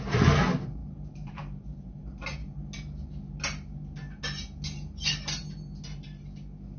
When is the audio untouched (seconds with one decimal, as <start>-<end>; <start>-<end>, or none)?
0.0-0.8; 2.0-6.8